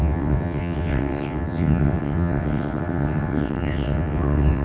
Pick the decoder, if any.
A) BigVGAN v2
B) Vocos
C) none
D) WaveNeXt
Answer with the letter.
D